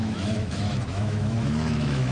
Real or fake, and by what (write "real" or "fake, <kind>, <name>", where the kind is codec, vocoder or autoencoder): fake, autoencoder, DAC-VAE